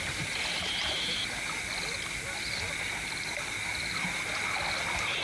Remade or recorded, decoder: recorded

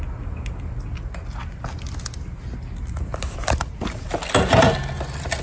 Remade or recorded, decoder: recorded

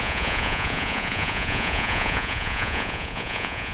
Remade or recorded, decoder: remade, vocoder, Vocos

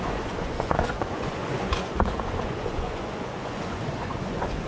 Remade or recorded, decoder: remade, vocoder, Vocos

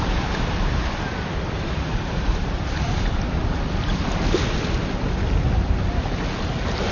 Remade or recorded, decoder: recorded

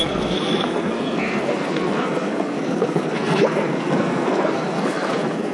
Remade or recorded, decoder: remade, codec, SNAC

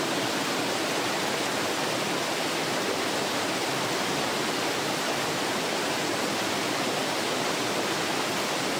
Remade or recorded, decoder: recorded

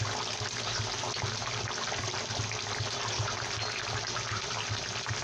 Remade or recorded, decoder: recorded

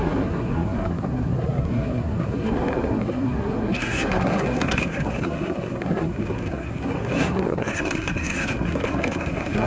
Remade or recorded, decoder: remade, codec, SNAC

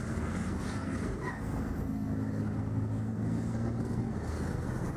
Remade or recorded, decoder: remade, codec, SNAC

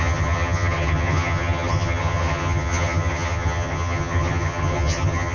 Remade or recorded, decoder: remade, vocoder, HiFi-GAN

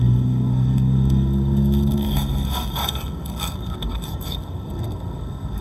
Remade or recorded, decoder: remade, codec, SNAC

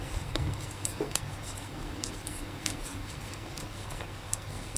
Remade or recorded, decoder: remade, codec, SNAC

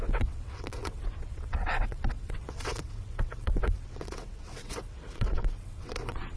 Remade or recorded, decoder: remade, vocoder, WaveNeXt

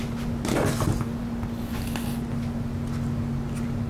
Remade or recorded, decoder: recorded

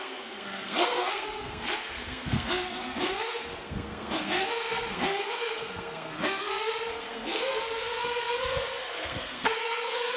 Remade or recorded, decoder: remade, codec, SNAC